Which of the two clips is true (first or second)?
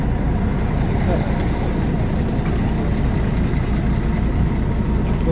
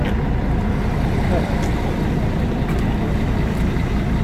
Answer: first